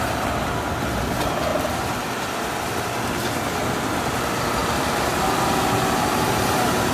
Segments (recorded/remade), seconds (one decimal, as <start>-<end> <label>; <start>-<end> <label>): 0.0-1.5 recorded; 1.5-2.7 remade; 2.7-4.6 recorded; 4.6-5.1 remade; 5.1-6.9 recorded